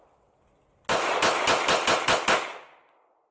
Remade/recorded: recorded